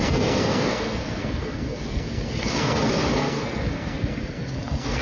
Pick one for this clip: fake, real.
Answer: fake